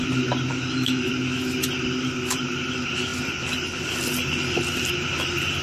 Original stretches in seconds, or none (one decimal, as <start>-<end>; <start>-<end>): 0.0-0.5; 1.1-5.6